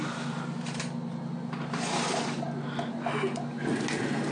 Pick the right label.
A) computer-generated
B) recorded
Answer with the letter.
B